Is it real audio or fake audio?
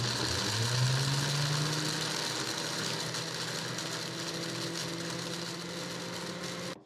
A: real